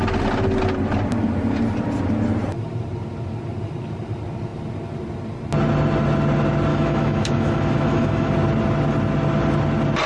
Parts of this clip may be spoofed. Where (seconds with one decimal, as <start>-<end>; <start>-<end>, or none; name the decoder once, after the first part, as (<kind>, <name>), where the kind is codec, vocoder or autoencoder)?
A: 6.7-8.3 (autoencoder, DAC-VAE)